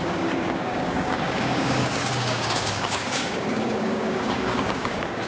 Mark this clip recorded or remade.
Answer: remade